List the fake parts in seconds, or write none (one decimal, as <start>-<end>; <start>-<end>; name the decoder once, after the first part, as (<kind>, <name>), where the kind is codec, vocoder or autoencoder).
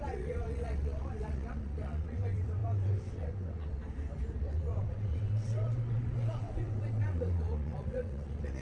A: 0.0-3.8 (vocoder, WaveNeXt); 4.4-8.6